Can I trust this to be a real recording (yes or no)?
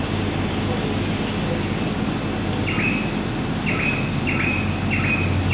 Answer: yes